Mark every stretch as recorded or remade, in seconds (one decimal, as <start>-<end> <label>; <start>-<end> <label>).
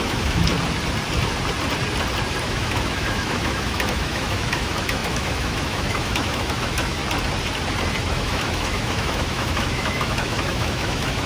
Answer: 0.0-0.5 remade; 0.5-2.4 recorded; 2.4-7.0 remade; 7.0-8.0 recorded; 8.0-11.3 remade